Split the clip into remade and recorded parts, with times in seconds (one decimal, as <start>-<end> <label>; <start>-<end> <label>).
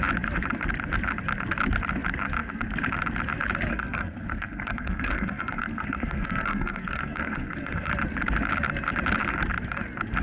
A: 0.0-3.7 recorded; 3.7-7.9 remade; 7.9-10.2 recorded